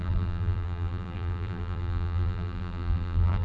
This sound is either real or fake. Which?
fake